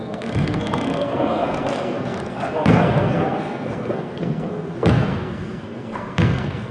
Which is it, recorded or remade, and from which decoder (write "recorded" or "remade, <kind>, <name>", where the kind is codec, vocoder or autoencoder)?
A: remade, codec, SNAC